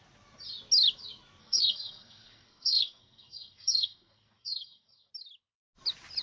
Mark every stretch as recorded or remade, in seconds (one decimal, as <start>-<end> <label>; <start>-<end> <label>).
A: 0.0-1.4 recorded; 1.4-5.1 remade; 5.1-6.2 recorded